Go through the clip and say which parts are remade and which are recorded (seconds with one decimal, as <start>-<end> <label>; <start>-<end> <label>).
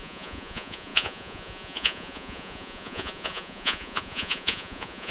0.0-5.1 remade